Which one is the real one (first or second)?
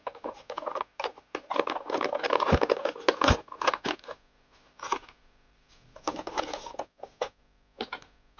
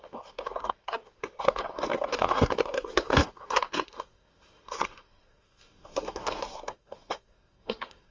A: first